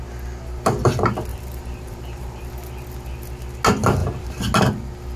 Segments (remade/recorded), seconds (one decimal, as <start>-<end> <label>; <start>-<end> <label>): 0.0-1.3 recorded; 1.3-2.4 remade; 2.4-5.2 recorded